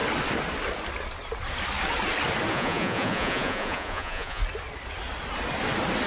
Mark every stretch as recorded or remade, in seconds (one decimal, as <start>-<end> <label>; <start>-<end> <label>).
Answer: 0.0-2.5 recorded; 2.5-4.4 remade; 4.4-6.1 recorded